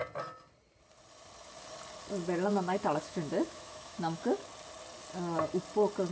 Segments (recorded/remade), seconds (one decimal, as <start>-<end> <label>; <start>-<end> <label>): 0.0-2.5 recorded; 2.5-4.5 remade; 4.5-6.1 recorded